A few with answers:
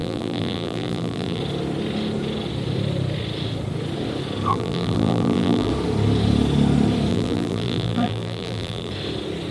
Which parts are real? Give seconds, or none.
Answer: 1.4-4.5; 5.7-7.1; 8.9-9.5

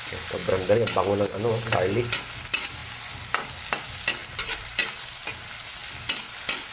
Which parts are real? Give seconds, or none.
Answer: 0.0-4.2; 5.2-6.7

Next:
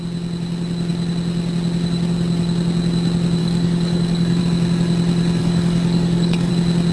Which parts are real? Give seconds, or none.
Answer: 0.0-3.4; 4.4-5.4; 6.5-6.9

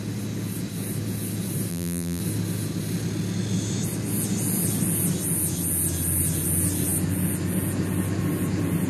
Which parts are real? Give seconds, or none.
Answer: 0.0-1.7; 2.2-8.9